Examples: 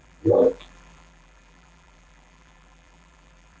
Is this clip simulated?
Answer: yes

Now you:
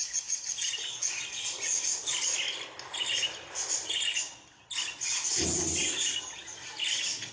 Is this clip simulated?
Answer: no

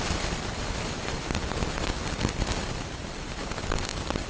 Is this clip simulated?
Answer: yes